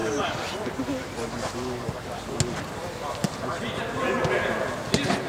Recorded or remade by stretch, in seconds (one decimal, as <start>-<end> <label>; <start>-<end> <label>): 0.0-5.3 recorded